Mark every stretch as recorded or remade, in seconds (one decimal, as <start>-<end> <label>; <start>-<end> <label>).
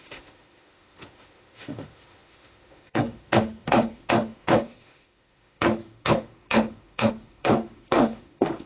0.0-8.7 remade